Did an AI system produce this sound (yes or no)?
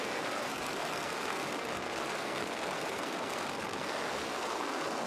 yes